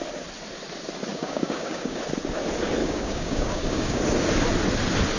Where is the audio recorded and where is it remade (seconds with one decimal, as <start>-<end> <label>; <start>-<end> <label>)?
0.0-1.1 recorded; 1.1-2.0 remade; 2.0-2.8 recorded; 2.8-4.0 remade; 4.0-5.2 recorded